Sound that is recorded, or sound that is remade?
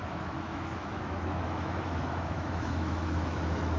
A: remade